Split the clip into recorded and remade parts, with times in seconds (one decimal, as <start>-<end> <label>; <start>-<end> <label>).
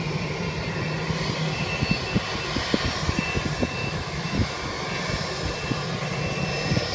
0.0-3.8 recorded; 3.8-4.5 remade; 4.5-6.9 recorded